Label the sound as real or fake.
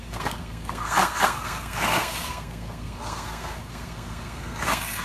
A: fake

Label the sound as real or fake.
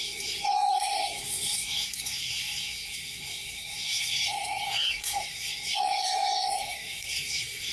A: fake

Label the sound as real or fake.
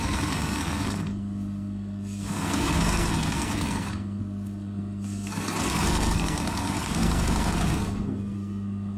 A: fake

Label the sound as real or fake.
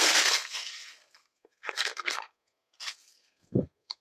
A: fake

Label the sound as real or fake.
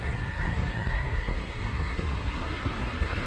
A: fake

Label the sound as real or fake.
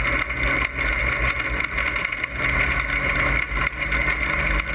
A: real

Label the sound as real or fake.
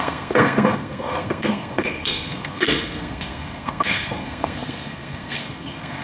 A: fake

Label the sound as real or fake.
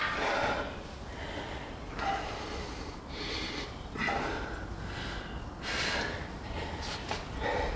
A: real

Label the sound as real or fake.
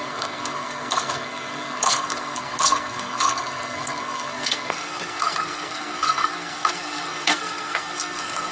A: fake